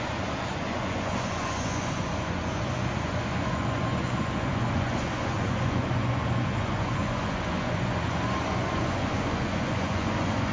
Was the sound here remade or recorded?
remade